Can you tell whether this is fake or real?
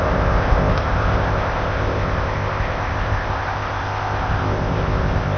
fake